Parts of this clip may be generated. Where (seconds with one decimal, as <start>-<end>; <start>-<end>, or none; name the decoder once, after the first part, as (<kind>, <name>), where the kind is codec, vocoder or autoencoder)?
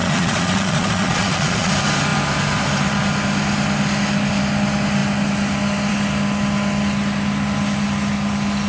0.0-1.7 (vocoder, Vocos)